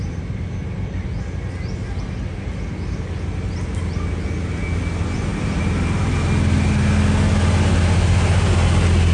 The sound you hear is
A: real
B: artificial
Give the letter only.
A